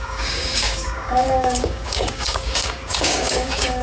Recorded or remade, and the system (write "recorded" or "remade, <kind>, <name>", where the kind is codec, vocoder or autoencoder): remade, codec, DAC